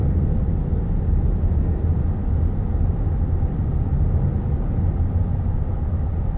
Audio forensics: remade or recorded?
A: recorded